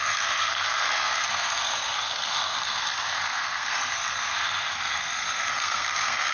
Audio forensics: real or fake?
fake